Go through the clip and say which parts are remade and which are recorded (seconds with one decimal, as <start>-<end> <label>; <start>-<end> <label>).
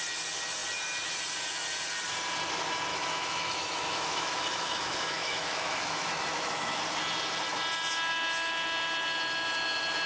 0.0-2.9 recorded; 2.9-6.8 remade; 6.8-10.1 recorded